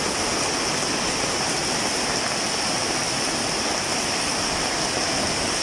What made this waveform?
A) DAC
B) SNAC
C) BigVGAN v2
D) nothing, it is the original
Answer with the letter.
D